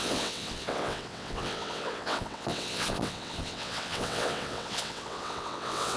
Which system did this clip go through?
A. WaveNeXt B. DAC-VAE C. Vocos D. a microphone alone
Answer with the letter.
A